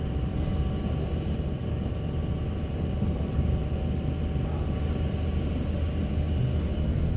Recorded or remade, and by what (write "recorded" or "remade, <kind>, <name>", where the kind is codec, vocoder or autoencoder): recorded